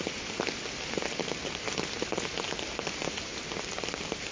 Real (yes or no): yes